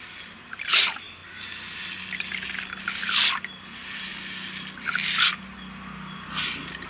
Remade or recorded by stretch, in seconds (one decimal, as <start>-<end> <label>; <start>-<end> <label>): 0.0-6.9 recorded